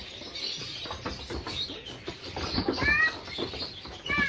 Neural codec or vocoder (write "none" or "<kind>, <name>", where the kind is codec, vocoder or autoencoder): none